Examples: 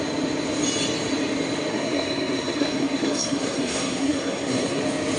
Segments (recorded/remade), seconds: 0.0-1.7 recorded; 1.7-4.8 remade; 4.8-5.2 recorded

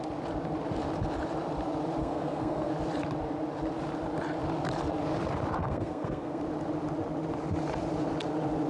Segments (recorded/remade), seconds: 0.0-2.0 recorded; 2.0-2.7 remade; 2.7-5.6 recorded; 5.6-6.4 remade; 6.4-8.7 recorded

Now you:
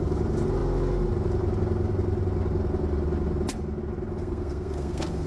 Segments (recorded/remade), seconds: 0.0-4.2 recorded; 4.2-5.3 remade

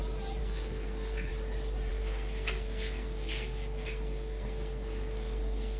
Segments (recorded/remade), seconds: 0.0-0.4 recorded; 0.4-1.3 remade; 1.3-1.9 recorded; 1.9-5.8 remade

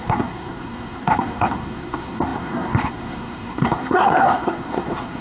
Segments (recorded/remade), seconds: 0.0-5.2 remade